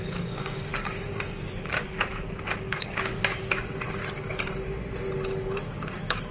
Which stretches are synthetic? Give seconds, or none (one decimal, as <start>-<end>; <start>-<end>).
0.0-4.0; 5.6-6.3